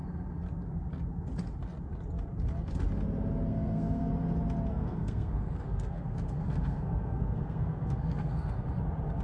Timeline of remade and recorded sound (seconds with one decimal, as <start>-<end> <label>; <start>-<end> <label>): 0.0-3.5 recorded; 3.5-4.1 remade; 4.1-4.7 recorded; 4.7-8.6 remade; 8.6-9.2 recorded